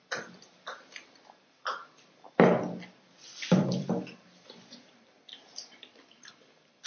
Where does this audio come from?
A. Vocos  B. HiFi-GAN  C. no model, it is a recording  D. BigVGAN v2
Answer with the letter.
D